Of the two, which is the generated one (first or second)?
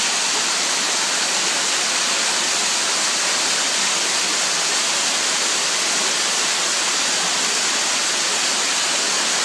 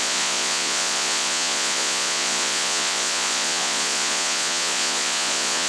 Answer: second